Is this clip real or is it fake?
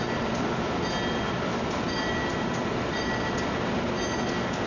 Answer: real